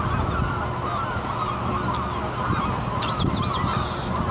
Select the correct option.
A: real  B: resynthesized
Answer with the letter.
A